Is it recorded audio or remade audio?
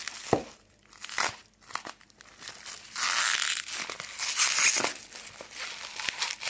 recorded